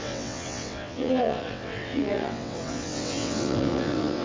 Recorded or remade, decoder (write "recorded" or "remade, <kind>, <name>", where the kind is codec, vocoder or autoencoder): remade, vocoder, WaveNeXt